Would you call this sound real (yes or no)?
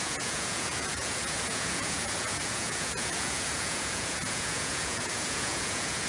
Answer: no